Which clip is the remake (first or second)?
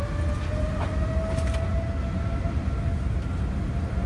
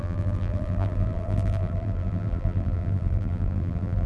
second